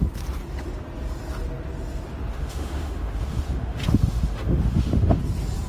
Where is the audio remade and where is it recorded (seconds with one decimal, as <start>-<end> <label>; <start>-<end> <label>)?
0.0-2.3 recorded; 2.3-5.2 remade; 5.2-5.7 recorded